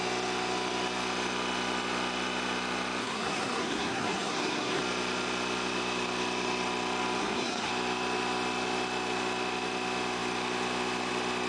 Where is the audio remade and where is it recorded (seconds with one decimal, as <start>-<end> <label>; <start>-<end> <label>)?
0.0-3.0 recorded; 3.0-4.8 remade; 4.8-7.2 recorded; 7.2-7.7 remade; 7.7-11.5 recorded

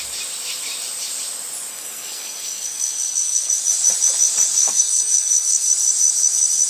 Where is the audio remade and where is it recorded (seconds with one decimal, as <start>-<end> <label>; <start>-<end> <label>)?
0.0-1.7 recorded; 1.7-3.5 remade; 3.5-4.6 recorded; 4.6-5.7 remade; 5.7-6.7 recorded

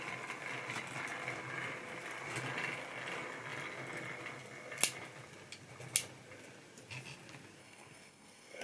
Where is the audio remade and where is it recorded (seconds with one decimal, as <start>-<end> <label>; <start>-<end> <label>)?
0.0-7.6 recorded; 7.6-8.6 remade

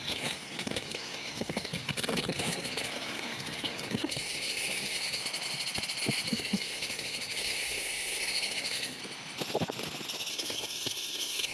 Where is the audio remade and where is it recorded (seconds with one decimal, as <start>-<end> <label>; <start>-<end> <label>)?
0.0-5.2 remade; 5.2-6.3 recorded; 6.3-9.0 remade; 9.0-10.3 recorded; 10.3-11.5 remade

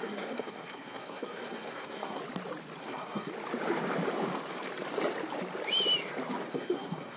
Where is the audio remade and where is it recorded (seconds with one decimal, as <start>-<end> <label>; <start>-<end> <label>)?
0.0-2.2 remade; 2.2-2.8 recorded; 2.8-3.3 remade; 3.3-6.5 recorded; 6.5-7.2 remade

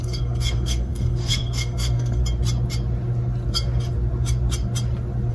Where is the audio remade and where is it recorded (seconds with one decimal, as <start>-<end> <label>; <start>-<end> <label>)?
0.0-2.2 remade; 2.2-5.3 recorded

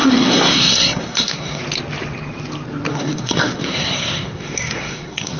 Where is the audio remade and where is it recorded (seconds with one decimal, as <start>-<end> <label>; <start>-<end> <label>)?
0.0-1.6 remade; 1.6-2.9 recorded; 2.9-5.4 remade